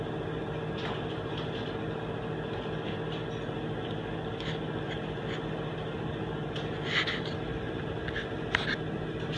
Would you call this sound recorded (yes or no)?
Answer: yes